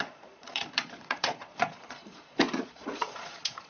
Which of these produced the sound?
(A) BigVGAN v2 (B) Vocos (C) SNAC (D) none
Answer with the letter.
B